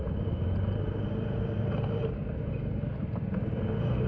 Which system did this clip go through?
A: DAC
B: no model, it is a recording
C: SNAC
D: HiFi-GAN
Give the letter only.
B